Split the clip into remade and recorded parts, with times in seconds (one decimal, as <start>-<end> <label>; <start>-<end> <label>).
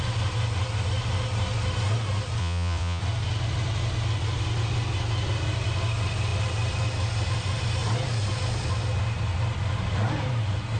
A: 0.0-2.4 recorded; 2.4-3.0 remade; 3.0-10.8 recorded